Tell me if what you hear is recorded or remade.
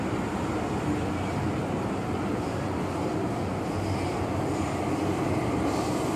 recorded